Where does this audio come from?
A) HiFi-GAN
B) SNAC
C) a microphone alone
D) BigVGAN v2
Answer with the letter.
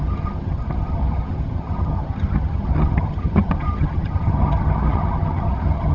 A